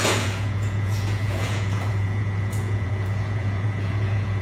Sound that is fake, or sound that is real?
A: fake